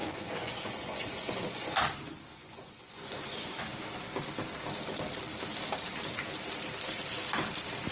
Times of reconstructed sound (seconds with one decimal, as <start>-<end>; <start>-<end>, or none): 0.0-1.8; 2.3-3.6